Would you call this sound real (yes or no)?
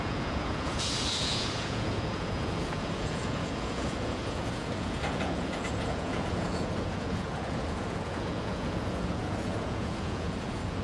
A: no